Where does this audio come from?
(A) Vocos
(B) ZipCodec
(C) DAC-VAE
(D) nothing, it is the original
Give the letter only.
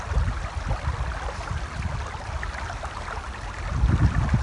D